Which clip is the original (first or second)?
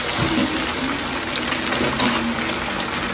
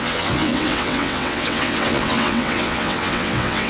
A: first